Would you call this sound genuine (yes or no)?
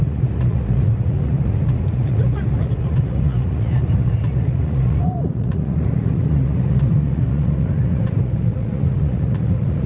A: no